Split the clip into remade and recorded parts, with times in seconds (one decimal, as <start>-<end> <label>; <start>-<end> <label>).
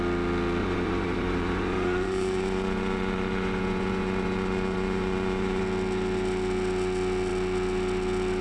0.0-0.6 recorded; 0.6-5.6 remade; 5.6-8.4 recorded